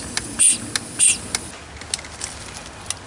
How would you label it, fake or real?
real